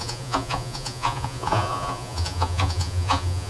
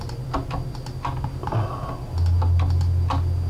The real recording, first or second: second